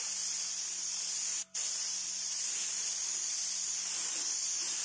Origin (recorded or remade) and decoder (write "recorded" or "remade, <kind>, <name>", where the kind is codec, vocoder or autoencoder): recorded